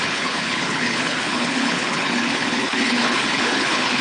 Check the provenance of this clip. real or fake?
fake